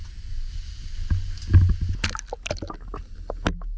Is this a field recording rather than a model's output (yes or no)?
yes